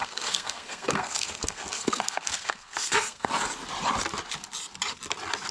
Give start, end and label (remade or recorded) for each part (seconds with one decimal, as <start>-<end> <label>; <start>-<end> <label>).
0.0-3.3 remade; 3.3-5.5 recorded